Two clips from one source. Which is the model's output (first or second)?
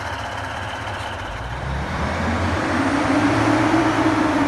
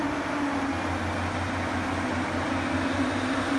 first